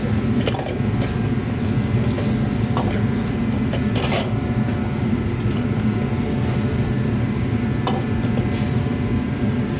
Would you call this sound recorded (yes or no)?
yes